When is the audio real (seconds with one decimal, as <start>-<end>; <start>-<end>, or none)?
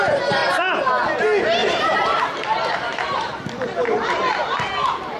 0.0-0.4; 0.9-1.6; 4.7-5.2